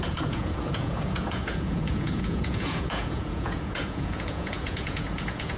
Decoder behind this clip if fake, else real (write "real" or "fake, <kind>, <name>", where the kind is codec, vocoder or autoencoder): fake, vocoder, Vocos